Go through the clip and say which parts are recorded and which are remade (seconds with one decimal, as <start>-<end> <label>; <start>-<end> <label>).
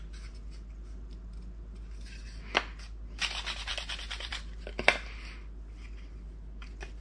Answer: 0.0-7.0 recorded